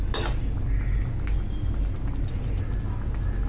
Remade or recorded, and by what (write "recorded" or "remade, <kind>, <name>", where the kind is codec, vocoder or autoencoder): recorded